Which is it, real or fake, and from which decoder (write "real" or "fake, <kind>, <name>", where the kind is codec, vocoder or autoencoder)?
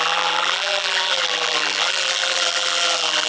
fake, vocoder, BigVGAN v2